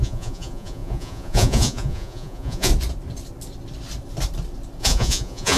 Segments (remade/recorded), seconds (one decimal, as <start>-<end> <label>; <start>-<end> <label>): 0.0-2.7 remade; 2.7-4.8 recorded; 4.8-5.6 remade